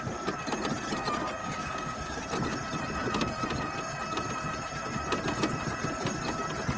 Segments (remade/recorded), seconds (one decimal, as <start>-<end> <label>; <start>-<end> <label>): 0.0-1.4 recorded; 1.4-2.2 remade; 2.2-6.8 recorded